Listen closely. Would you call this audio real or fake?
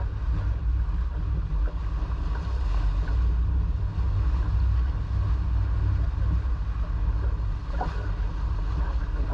real